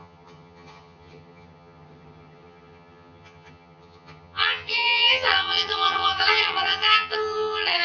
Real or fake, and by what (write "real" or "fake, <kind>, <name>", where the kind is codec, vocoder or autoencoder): fake, vocoder, HiFi-GAN